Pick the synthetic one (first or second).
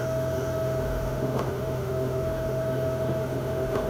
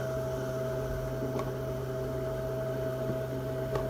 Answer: first